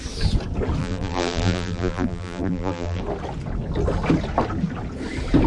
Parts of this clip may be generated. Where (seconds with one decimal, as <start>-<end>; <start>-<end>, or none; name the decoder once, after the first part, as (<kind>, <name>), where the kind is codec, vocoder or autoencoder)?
0.8-3.0 (vocoder, BigVGAN v2)